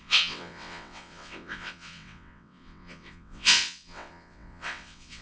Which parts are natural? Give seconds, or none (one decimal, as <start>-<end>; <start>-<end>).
none